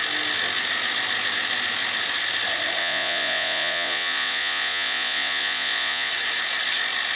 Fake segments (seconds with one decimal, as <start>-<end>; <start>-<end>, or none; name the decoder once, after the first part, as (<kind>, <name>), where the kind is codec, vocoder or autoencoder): 2.8-6.1 (vocoder, Vocos)